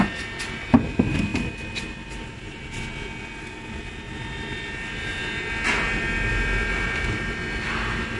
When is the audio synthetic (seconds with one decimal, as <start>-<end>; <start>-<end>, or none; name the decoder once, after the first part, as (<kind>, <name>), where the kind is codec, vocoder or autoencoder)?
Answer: none